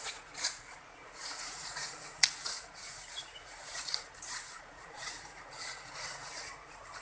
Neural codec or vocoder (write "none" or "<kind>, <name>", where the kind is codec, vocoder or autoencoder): vocoder, Vocos